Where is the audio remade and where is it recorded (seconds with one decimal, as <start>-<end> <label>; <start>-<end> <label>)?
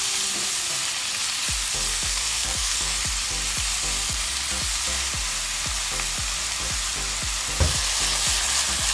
0.0-1.9 recorded; 1.9-3.0 remade; 3.0-8.9 recorded